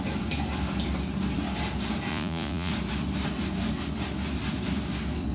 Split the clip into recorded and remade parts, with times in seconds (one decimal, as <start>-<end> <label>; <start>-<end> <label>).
0.0-2.1 recorded; 2.1-2.7 remade; 2.7-5.3 recorded